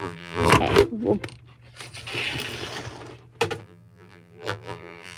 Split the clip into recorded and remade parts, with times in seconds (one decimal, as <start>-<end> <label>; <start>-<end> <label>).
0.0-0.5 remade; 0.5-3.6 recorded; 3.6-5.2 remade